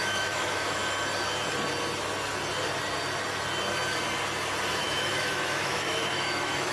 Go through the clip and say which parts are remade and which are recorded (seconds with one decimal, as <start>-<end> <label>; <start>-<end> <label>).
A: 0.0-0.8 remade; 0.8-4.8 recorded; 4.8-6.7 remade